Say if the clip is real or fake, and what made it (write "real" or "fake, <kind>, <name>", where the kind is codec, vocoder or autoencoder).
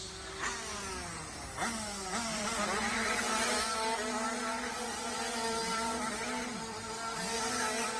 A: real